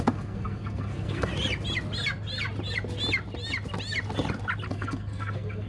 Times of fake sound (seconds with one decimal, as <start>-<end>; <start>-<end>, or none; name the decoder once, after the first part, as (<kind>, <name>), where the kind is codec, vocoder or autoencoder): 0.0-1.3 (codec, SNAC); 4.7-5.7